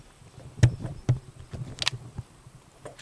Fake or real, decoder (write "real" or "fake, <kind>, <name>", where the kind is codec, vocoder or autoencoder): real